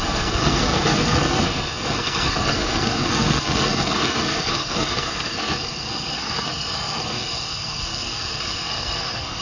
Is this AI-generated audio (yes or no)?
yes